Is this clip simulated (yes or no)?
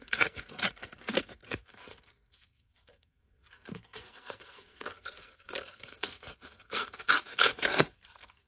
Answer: yes